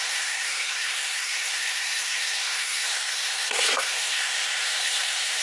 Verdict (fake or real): fake